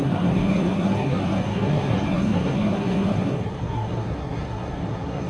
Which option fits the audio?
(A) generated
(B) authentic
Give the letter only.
A